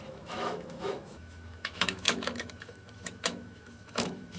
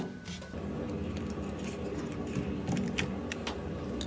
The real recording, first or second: second